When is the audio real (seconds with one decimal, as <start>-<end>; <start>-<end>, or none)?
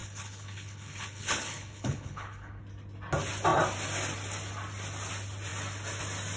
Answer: 2.6-6.4